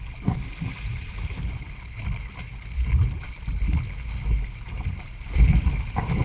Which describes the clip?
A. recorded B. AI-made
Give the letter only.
A